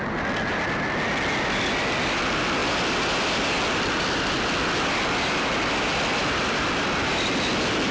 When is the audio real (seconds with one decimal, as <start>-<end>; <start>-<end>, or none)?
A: 0.0-7.9